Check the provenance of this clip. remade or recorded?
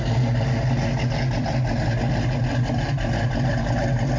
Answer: remade